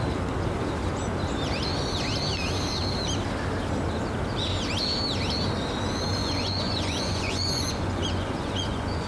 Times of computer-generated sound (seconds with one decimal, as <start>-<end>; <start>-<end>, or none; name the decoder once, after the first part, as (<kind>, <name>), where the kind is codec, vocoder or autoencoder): 6.2-9.1 (vocoder, Vocos)